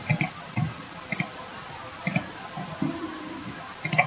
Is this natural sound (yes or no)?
yes